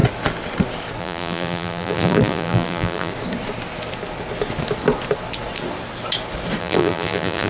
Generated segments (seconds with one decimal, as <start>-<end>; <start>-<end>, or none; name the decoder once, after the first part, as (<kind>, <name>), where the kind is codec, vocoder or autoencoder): 1.0-3.1 (vocoder, BigVGAN v2); 6.6-7.5